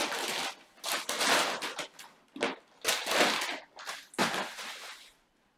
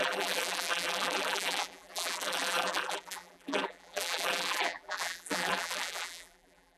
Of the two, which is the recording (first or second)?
first